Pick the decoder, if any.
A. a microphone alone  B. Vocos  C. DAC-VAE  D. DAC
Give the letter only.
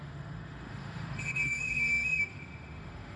C